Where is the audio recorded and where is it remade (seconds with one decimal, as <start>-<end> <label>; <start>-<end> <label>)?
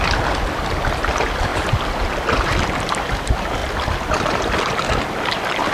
0.0-5.7 recorded